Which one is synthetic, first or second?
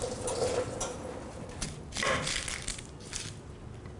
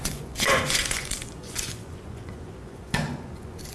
second